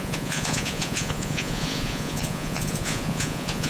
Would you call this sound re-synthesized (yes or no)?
yes